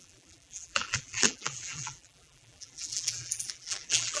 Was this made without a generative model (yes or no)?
no